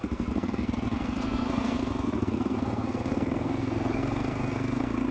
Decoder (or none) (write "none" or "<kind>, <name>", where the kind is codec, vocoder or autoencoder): codec, SNAC